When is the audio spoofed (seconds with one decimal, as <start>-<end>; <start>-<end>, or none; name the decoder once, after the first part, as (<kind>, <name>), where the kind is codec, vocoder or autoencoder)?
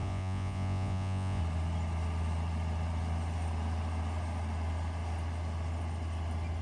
0.0-1.4 (vocoder, Vocos)